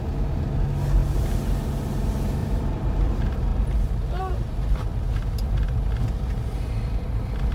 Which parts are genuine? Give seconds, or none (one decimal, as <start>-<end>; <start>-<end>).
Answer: 0.0-2.4; 3.1-3.5; 4.2-7.5